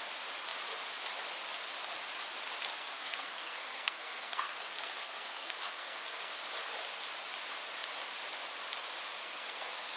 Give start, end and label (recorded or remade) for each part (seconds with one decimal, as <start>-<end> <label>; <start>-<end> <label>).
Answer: 0.0-2.7 recorded; 2.7-6.3 remade; 6.3-9.2 recorded; 9.2-10.0 remade